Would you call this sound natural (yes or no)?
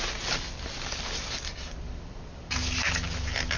yes